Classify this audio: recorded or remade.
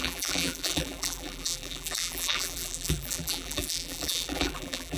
remade